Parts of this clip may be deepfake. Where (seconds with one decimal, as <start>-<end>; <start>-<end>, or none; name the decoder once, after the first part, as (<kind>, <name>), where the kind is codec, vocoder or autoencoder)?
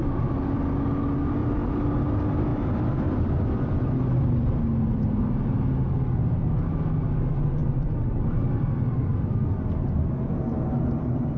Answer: 1.4-1.9 (vocoder, BigVGAN v2); 2.5-4.2; 7.6-9.4